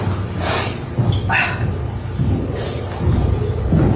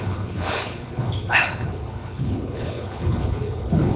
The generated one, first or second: second